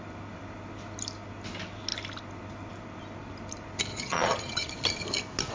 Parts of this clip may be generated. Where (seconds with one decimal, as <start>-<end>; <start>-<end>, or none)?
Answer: 3.9-4.7